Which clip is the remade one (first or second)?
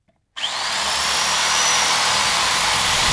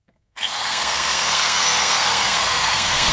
second